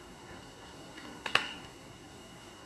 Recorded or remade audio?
remade